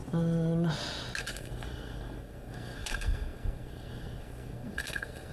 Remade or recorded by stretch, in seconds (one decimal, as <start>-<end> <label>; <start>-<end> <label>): 0.0-1.2 recorded; 1.2-5.3 remade